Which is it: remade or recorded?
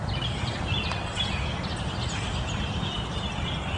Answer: recorded